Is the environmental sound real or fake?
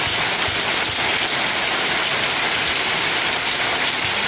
real